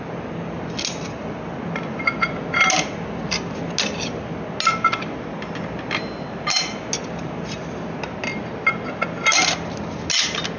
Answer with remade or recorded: recorded